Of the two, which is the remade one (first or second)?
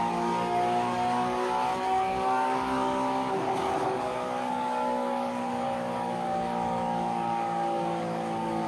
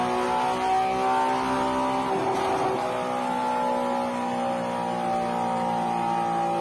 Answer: first